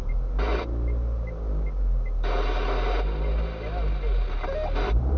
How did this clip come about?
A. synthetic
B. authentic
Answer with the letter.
B